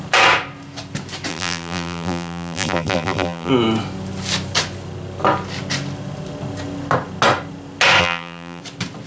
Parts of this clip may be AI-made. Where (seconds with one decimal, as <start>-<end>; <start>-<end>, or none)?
1.3-3.5; 8.0-8.6